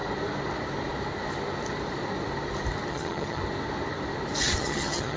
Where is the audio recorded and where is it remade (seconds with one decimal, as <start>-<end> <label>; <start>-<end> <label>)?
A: 0.0-2.9 recorded; 2.9-3.4 remade; 3.4-4.6 recorded; 4.6-5.2 remade